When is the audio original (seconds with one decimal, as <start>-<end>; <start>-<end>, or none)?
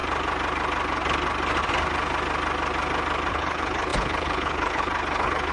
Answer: 0.0-3.3